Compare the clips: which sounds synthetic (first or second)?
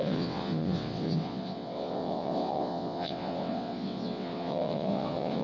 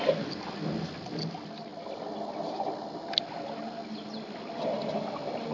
first